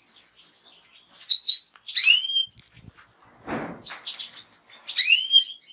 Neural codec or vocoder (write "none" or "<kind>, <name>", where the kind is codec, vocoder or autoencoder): none